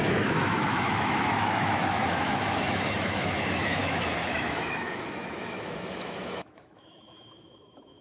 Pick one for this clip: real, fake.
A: fake